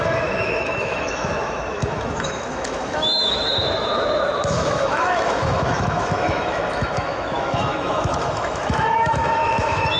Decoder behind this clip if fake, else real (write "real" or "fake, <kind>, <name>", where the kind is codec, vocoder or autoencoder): fake, autoencoder, DAC-VAE